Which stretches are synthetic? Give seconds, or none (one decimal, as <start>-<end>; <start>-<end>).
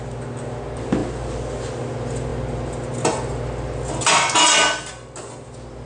none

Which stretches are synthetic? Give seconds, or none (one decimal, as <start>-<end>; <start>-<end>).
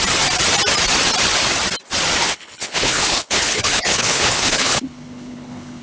2.2-5.8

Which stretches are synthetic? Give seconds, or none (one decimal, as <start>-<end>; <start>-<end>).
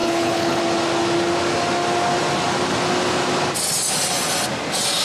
0.0-0.6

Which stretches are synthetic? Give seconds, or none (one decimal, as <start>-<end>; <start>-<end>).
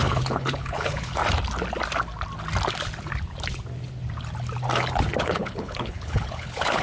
0.0-1.2; 5.2-6.8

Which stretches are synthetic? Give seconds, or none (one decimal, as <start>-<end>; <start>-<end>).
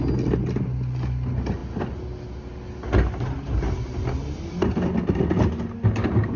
none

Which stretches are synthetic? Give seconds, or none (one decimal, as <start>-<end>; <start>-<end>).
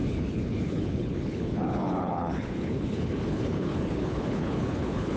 0.0-5.2